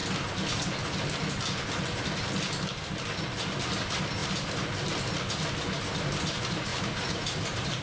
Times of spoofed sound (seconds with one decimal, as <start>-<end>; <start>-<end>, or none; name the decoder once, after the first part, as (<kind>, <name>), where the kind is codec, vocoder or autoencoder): 6.7-7.8 (vocoder, BigVGAN v2)